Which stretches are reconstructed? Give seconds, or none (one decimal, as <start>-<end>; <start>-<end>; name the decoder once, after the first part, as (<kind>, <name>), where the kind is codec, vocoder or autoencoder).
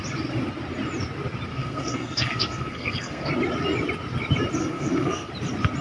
1.5-3.3 (codec, SNAC); 4.6-5.3